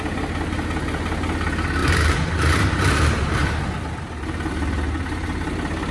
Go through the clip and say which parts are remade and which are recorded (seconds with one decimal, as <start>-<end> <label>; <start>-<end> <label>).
0.0-1.8 recorded; 1.8-3.6 remade; 3.6-5.9 recorded